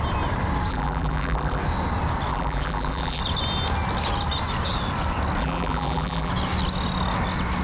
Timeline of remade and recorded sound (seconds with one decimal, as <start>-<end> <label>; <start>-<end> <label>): 0.0-0.7 recorded; 0.7-1.6 remade; 1.6-2.3 recorded; 2.3-3.2 remade; 3.2-5.4 recorded; 5.4-6.3 remade; 6.3-7.6 recorded